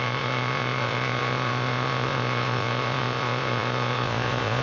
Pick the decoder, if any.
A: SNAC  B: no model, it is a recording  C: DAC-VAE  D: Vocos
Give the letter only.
D